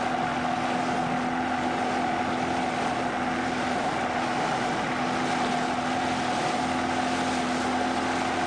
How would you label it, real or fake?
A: real